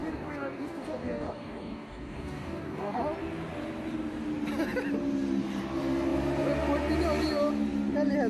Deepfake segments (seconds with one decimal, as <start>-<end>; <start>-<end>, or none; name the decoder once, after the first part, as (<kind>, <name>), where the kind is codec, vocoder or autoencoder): 0.0-3.0 (codec, DAC)

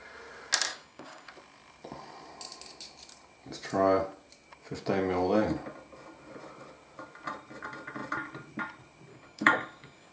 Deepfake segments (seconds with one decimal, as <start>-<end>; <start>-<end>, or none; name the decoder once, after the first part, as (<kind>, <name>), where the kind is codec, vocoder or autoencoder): 0.7-1.3 (codec, DAC); 9.1-10.1

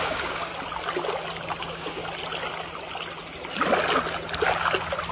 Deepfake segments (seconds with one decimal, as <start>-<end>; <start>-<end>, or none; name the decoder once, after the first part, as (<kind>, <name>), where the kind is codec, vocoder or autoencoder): 0.0-0.5 (codec, DAC); 1.6-2.0

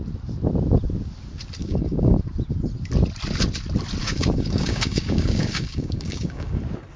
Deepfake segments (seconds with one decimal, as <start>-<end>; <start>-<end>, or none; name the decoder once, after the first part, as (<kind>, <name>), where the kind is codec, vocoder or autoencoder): 1.6-2.2 (codec, DAC); 4.0-6.6

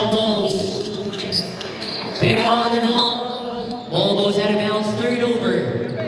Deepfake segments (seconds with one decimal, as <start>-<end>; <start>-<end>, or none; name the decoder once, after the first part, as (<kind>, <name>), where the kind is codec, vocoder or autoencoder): 0.0-3.8 (codec, DAC)

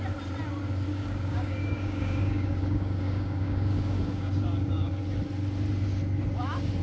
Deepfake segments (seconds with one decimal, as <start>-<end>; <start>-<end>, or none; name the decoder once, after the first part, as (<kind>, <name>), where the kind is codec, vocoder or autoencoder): 0.9-5.0 (codec, DAC)